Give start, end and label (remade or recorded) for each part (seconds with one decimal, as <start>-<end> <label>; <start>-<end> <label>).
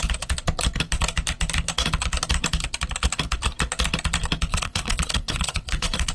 0.0-4.5 recorded; 4.5-6.1 remade